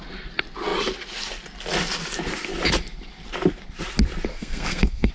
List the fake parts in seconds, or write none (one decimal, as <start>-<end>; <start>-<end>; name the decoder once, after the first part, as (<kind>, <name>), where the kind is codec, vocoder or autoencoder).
4.3-5.1 (codec, SNAC)